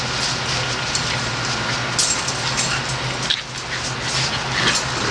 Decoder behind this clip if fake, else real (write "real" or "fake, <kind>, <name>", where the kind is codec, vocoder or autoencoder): real